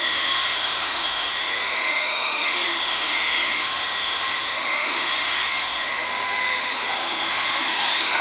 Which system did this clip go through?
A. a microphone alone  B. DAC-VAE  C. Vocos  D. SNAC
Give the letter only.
B